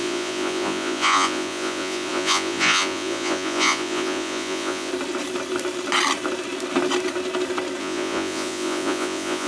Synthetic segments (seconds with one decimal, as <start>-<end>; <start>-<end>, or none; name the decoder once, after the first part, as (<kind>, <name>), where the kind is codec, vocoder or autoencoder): 0.0-4.9 (vocoder, Vocos); 7.8-9.5